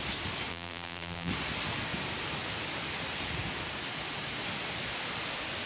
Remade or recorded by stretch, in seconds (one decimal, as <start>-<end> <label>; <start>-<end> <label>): 0.0-0.5 recorded; 0.5-1.3 remade; 1.3-5.7 recorded